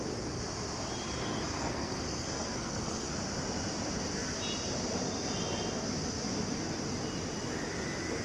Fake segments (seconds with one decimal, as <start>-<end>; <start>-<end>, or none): 1.2-3.1